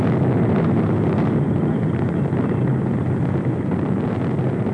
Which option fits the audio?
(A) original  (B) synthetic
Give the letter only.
A